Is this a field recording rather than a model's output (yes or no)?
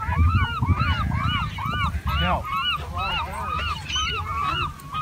yes